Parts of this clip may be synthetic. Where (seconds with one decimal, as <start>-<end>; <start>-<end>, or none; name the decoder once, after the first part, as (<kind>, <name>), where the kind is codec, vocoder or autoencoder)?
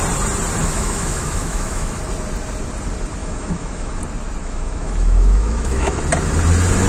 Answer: 0.6-2.0 (autoencoder, DAC-VAE); 3.2-4.0; 4.4-6.0